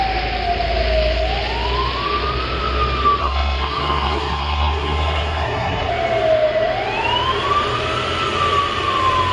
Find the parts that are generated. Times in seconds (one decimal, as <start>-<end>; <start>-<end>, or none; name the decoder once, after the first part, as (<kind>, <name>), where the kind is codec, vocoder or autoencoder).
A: 3.2-5.9 (codec, SNAC)